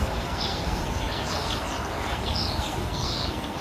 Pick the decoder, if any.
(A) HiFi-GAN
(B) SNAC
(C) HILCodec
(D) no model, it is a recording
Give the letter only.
B